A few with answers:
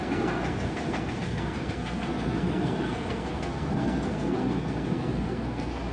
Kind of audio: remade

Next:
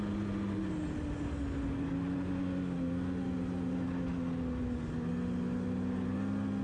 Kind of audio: recorded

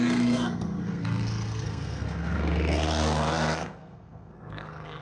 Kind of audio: remade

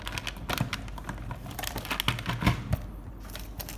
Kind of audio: recorded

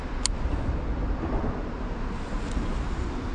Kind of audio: recorded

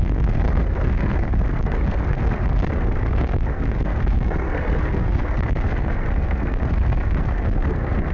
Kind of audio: remade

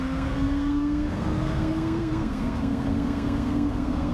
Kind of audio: remade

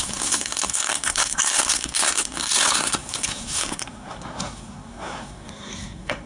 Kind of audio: remade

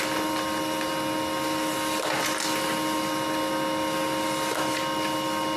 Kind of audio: recorded